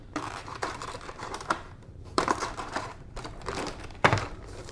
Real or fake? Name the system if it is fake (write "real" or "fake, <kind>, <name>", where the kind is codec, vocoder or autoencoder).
fake, vocoder, BigVGAN v2